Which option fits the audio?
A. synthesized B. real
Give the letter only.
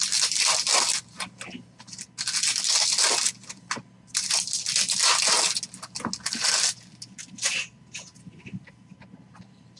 B